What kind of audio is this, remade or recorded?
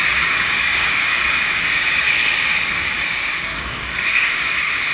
remade